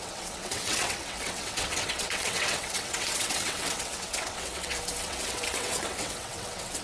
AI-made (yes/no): yes